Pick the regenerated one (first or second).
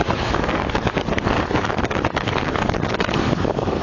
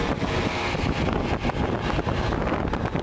first